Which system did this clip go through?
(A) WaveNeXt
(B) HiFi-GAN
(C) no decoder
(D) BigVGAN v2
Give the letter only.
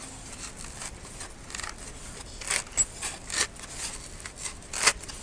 C